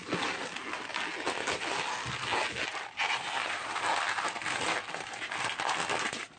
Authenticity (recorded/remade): recorded